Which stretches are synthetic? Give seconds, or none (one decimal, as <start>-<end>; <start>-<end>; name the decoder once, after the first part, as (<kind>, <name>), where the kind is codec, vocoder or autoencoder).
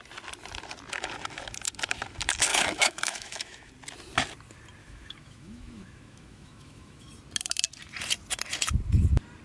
2.5-3.7 (autoencoder, DAC-VAE); 4.8-7.1